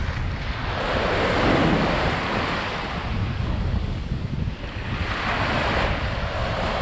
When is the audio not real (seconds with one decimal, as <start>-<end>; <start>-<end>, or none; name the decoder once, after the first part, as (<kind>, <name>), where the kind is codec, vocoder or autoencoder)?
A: 3.2-4.3 (codec, DAC)